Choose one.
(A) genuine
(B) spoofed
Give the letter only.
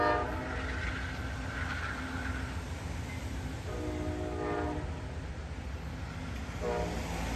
A